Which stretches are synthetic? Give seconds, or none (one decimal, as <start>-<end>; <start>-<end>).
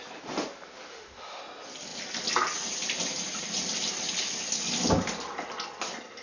0.9-1.4